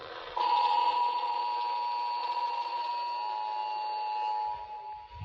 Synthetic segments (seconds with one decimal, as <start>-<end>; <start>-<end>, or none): 0.0-1.4; 2.2-2.9